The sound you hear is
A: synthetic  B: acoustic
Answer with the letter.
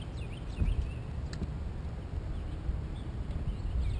B